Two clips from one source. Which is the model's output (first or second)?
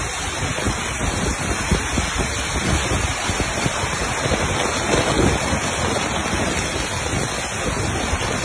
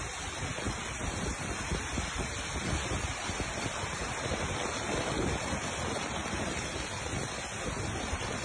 second